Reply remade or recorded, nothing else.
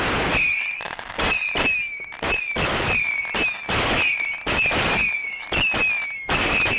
recorded